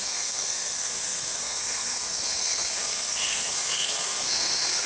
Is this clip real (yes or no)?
no